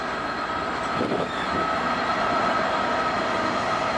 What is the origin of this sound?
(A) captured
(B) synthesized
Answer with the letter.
A